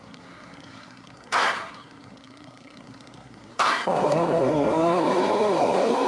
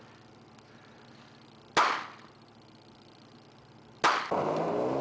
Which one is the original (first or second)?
second